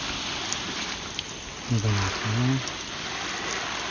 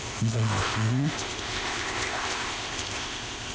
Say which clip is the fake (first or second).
second